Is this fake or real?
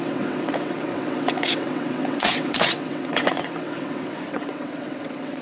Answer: fake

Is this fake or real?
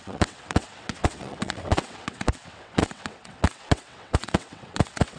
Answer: fake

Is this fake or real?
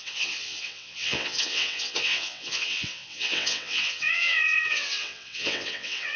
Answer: fake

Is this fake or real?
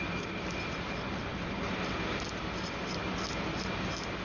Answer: real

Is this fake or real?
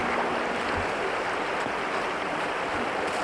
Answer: real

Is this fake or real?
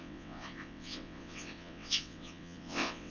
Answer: fake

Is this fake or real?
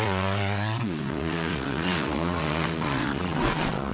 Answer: fake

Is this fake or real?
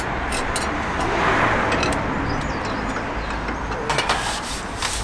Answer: real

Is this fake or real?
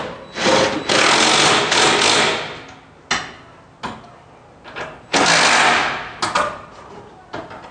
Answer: real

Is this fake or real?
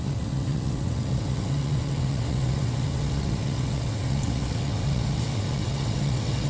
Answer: fake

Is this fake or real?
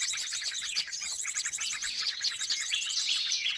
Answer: fake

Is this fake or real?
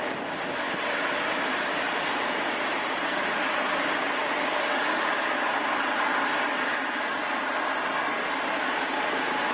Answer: real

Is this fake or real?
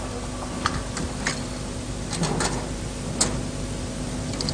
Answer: real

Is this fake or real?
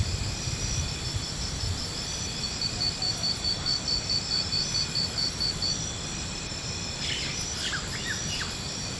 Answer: real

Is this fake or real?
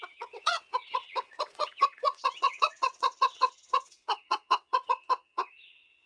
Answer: fake